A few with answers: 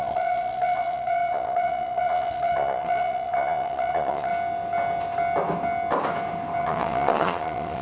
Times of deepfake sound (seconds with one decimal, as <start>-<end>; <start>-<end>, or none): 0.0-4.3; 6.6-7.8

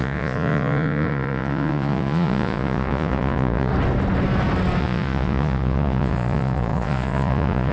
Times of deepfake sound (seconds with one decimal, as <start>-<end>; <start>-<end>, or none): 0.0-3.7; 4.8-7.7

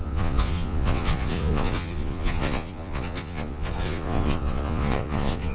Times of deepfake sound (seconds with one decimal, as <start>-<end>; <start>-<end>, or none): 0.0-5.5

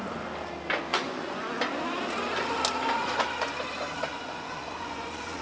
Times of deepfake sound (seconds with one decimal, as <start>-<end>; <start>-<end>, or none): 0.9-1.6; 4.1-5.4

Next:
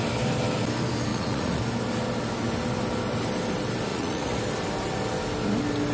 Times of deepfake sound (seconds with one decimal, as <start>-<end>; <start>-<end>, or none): 1.1-1.6; 3.9-4.4

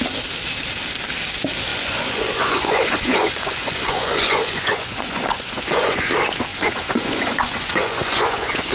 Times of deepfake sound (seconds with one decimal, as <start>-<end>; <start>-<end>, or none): 1.7-6.1; 6.5-8.7